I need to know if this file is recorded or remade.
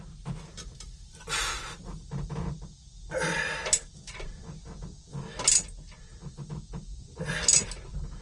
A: recorded